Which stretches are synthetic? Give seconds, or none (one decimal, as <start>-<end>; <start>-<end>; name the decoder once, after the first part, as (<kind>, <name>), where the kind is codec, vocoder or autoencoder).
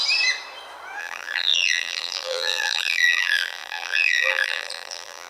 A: 1.0-5.3 (vocoder, BigVGAN v2)